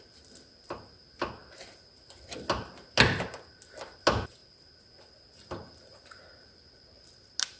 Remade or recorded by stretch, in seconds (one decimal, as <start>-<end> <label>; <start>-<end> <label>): 0.0-7.6 recorded